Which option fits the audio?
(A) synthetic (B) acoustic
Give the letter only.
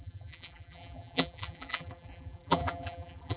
A